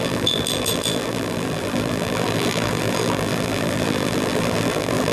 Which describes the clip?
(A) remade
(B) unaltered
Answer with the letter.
A